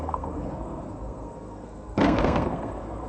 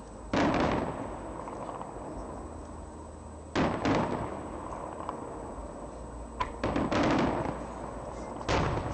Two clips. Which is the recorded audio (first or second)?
second